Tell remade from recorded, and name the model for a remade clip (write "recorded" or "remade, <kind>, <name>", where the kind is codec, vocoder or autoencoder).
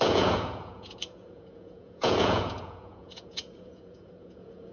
remade, vocoder, Vocos